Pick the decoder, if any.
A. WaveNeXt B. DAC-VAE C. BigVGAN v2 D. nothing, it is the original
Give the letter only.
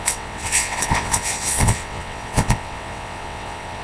A